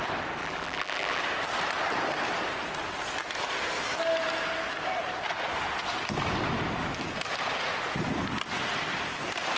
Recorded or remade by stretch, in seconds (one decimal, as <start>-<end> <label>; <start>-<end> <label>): 0.0-0.4 recorded; 0.4-1.2 remade; 1.2-9.6 recorded